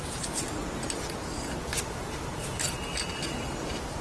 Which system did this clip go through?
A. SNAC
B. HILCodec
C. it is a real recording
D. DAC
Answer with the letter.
C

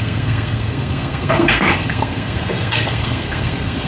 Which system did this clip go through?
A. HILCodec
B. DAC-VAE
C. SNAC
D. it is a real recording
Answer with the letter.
C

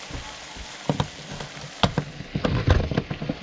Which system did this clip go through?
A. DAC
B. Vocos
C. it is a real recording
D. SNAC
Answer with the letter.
C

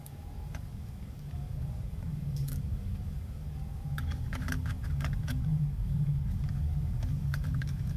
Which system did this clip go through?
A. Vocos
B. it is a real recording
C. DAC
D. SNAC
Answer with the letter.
C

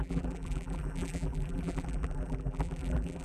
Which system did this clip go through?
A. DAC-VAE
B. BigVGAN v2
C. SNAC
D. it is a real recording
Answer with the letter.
B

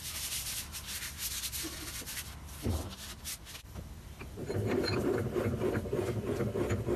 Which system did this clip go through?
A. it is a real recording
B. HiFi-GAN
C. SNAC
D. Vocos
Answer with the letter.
A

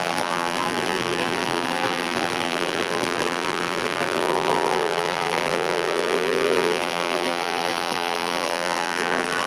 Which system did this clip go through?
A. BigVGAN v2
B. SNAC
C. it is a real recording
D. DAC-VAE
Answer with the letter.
A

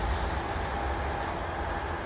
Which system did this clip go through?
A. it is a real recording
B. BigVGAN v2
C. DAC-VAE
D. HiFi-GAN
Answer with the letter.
A